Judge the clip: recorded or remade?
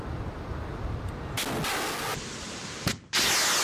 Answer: recorded